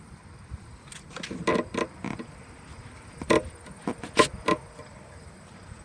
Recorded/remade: recorded